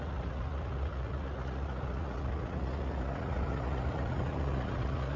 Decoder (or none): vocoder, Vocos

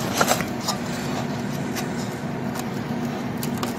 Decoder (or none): none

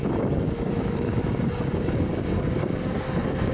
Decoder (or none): codec, DAC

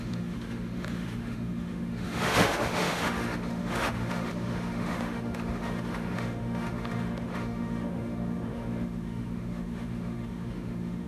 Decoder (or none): autoencoder, DAC-VAE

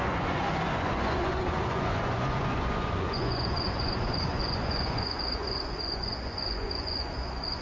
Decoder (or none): vocoder, Vocos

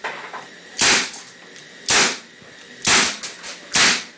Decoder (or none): none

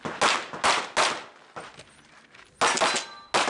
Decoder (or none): none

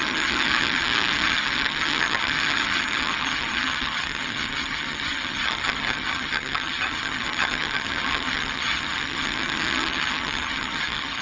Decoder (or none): vocoder, HiFi-GAN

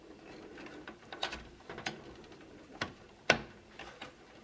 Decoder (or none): none